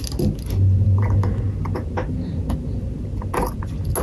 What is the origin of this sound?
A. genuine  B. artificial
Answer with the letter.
A